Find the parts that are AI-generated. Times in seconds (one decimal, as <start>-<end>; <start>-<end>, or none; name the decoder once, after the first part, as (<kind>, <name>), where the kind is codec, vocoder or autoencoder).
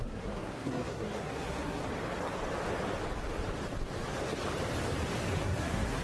0.0-1.8 (codec, SNAC); 5.4-6.0